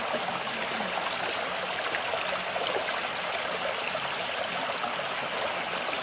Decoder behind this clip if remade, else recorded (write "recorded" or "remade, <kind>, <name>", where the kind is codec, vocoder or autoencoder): recorded